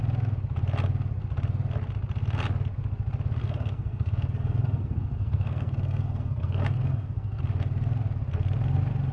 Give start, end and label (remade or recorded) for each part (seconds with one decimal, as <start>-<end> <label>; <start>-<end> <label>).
0.0-3.4 recorded; 3.4-7.4 remade; 7.4-9.1 recorded